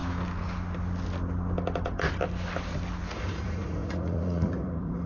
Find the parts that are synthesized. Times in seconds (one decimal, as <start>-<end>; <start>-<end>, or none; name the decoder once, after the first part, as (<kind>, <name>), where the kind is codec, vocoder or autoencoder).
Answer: 3.1-5.1 (vocoder, Vocos)